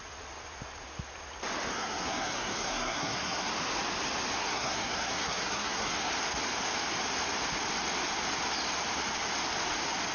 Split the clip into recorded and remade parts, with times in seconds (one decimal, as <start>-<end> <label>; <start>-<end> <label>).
0.0-1.7 recorded; 1.7-3.5 remade; 3.5-4.4 recorded; 4.4-6.1 remade; 6.1-10.1 recorded